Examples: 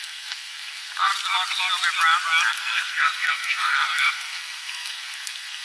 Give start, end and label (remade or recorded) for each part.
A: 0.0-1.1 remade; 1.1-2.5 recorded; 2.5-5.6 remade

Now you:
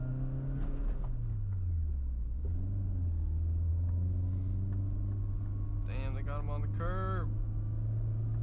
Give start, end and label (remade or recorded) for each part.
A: 0.0-8.4 recorded

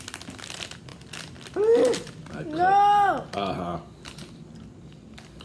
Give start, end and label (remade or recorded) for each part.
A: 0.0-5.4 recorded

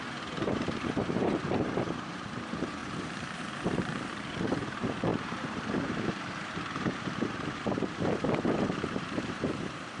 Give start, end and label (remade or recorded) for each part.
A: 0.0-10.0 remade

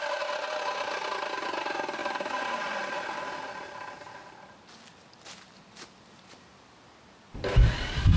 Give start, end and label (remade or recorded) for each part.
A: 0.0-2.0 recorded; 2.0-2.8 remade; 2.8-6.5 recorded; 6.5-8.2 remade